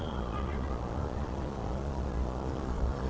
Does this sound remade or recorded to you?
remade